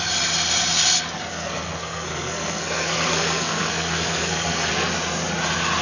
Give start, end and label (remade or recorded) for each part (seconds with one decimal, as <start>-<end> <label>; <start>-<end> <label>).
0.0-1.3 recorded; 1.3-4.7 remade; 4.7-5.8 recorded